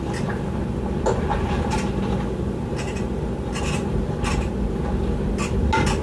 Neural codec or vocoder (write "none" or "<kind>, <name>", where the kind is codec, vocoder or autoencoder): none